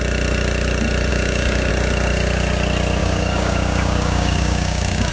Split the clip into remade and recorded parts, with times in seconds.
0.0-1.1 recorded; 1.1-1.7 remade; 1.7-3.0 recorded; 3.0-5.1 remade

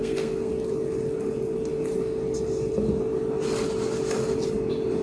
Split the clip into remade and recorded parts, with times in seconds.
0.0-0.5 remade; 0.5-5.0 recorded

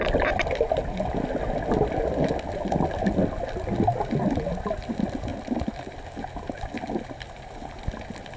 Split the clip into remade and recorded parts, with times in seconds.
0.0-5.3 recorded; 5.3-7.9 remade; 7.9-8.4 recorded

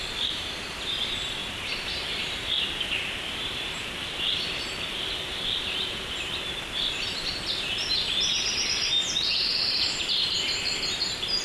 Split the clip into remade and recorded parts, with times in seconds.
0.0-7.3 remade; 7.3-9.5 recorded; 9.5-11.4 remade